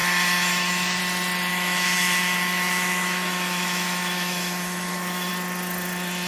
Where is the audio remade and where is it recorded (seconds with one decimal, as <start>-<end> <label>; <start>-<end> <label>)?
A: 0.0-1.0 remade; 1.0-1.5 recorded; 1.5-5.3 remade; 5.3-6.3 recorded